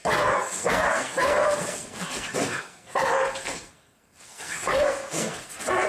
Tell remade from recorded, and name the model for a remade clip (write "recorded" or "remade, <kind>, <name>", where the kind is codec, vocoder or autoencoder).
remade, codec, SNAC